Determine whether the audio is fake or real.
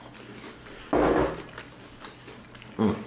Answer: real